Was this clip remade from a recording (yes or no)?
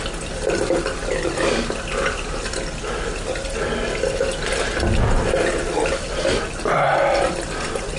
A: no